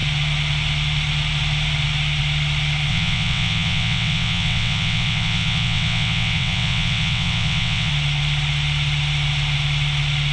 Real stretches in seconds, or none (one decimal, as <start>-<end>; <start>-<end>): 0.0-2.9; 7.9-10.3